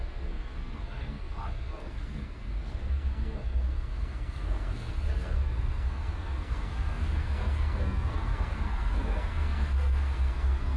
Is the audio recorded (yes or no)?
no